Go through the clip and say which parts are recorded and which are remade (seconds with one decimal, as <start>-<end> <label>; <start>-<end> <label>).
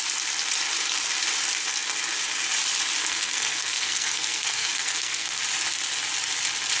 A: 0.0-3.0 recorded; 3.0-5.4 remade; 5.4-6.8 recorded